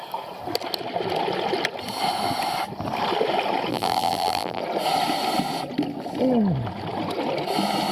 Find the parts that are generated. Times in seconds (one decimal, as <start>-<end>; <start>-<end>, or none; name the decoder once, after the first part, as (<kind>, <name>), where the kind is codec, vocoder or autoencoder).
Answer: 3.7-4.6 (vocoder, BigVGAN v2)